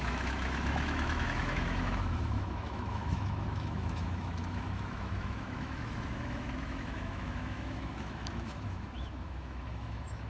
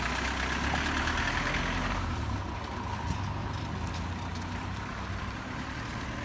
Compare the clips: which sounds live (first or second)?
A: second